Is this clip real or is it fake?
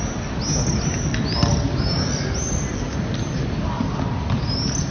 real